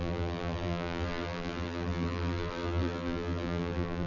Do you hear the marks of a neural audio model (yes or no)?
yes